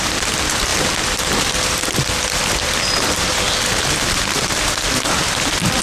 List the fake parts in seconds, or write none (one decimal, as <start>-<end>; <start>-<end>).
0.0-0.7; 4.2-5.8